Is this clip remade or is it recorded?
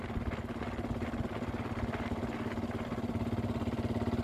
recorded